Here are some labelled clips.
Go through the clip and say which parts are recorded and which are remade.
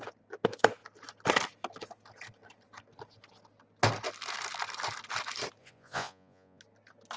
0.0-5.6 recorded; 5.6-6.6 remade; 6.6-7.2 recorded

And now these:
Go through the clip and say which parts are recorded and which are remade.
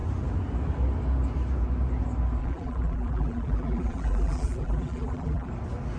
0.0-2.4 recorded; 2.4-5.5 remade; 5.5-6.0 recorded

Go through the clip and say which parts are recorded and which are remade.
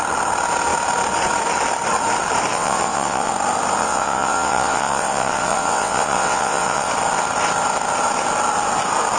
0.0-2.5 recorded; 2.5-3.3 remade; 3.3-3.8 recorded; 3.8-6.9 remade; 6.9-9.2 recorded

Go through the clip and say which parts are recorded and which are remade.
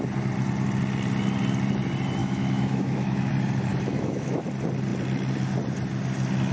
0.0-2.2 recorded; 2.2-3.3 remade; 3.3-3.7 recorded; 3.7-4.4 remade; 4.4-6.5 recorded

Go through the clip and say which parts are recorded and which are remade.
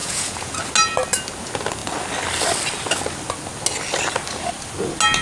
0.0-0.6 remade; 0.6-5.2 recorded